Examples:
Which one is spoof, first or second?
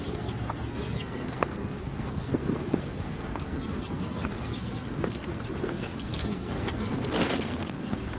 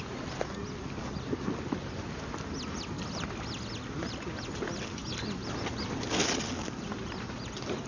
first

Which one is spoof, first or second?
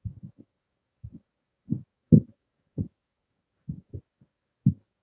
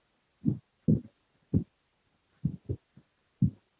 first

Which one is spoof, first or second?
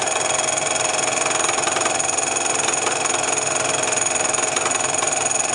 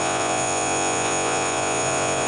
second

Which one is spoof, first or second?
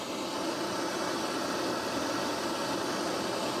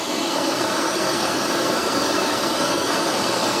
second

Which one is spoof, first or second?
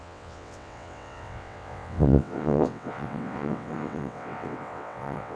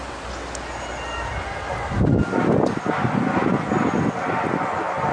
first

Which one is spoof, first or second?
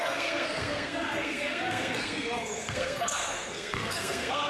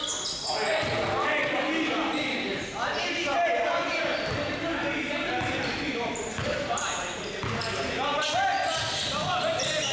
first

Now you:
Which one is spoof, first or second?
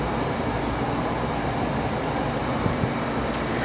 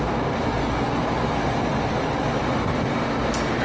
first